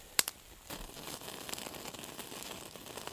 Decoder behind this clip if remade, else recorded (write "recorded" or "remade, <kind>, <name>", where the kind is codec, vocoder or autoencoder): recorded